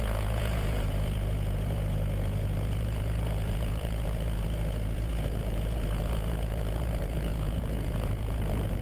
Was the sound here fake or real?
fake